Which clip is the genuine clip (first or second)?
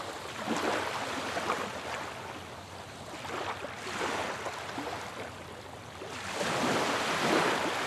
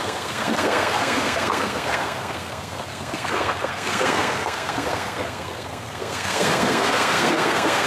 first